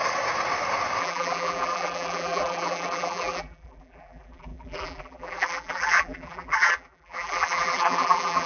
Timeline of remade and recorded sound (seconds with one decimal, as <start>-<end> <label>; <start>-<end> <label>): 0.0-1.0 recorded; 1.0-8.5 remade